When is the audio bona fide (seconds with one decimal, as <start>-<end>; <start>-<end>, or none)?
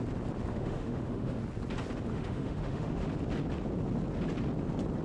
0.0-0.5; 1.4-2.1; 3.0-5.0